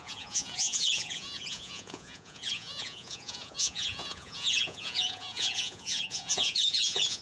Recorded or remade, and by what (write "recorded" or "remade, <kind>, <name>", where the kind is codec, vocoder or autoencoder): remade, vocoder, Vocos